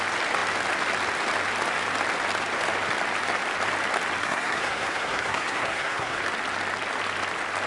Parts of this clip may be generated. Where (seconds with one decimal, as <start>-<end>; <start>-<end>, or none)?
4.2-6.2